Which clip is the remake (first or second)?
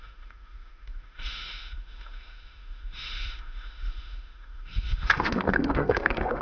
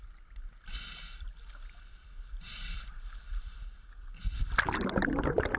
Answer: first